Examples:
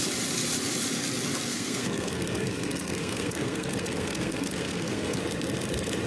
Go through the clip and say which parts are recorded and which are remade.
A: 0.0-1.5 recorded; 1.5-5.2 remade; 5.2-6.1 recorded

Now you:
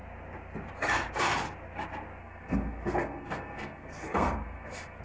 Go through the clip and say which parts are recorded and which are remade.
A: 0.0-2.2 recorded; 2.2-5.0 remade

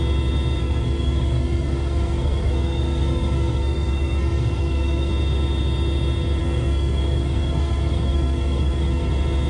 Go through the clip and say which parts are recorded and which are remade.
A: 0.0-0.6 recorded; 0.6-5.1 remade; 5.1-6.4 recorded; 6.4-9.1 remade; 9.1-9.5 recorded

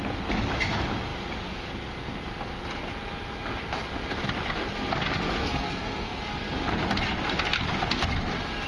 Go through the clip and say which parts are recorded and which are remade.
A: 0.0-5.4 recorded; 5.4-6.2 remade; 6.2-8.7 recorded

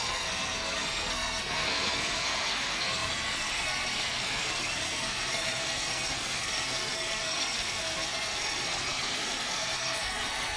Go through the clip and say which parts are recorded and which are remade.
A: 0.0-10.6 remade

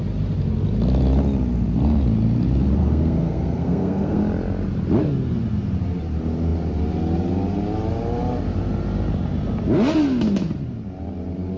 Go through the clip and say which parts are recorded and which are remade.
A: 0.0-2.8 recorded; 2.8-4.2 remade; 4.2-11.6 recorded

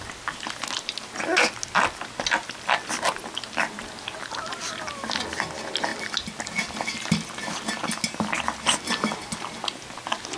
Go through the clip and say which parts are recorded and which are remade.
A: 0.0-10.4 recorded